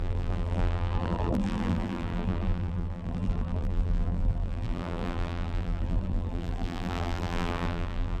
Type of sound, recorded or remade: remade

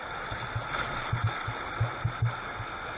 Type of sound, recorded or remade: recorded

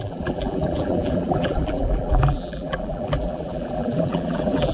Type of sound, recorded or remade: remade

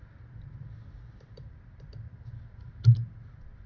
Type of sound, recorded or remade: remade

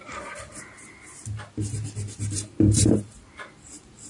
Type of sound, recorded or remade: remade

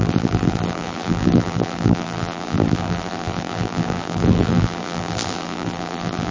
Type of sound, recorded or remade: remade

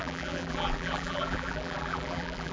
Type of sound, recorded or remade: remade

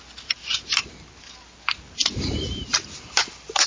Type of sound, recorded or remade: recorded